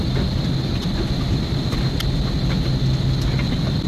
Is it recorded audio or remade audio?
recorded